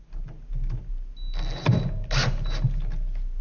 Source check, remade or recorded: recorded